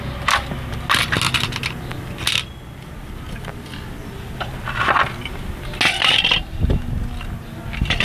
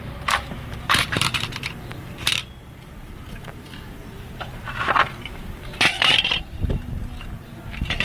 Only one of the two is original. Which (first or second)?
first